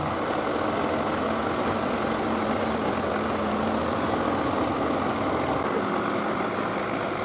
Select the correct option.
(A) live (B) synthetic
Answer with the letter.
A